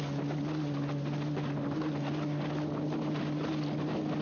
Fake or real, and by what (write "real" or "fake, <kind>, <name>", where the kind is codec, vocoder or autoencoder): real